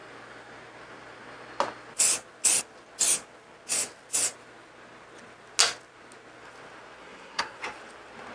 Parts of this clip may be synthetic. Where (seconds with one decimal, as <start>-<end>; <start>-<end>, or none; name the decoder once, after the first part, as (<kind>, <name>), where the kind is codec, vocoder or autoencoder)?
7.0-7.6 (codec, SNAC)